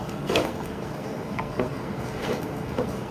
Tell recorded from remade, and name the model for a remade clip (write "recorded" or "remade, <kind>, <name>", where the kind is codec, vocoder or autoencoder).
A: remade, codec, SNAC